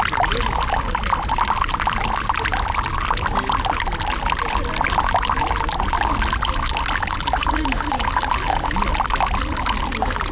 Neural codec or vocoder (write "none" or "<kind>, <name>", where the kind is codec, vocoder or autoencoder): none